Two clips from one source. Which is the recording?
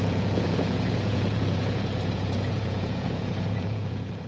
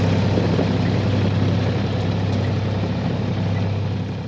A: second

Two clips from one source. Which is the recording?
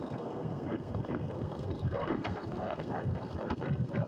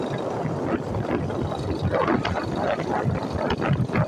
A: second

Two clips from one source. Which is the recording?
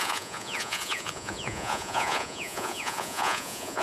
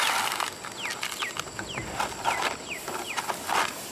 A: second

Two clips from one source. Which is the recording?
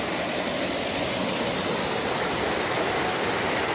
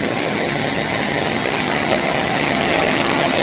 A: first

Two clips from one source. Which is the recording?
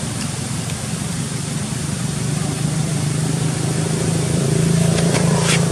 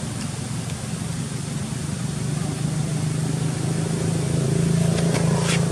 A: second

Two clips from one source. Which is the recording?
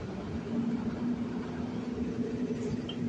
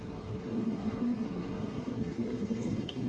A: first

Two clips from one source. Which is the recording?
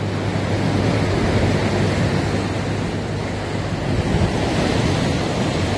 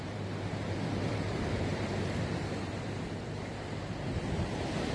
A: first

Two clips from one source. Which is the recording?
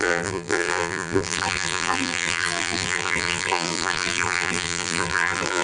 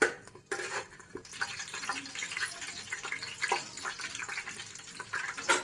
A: second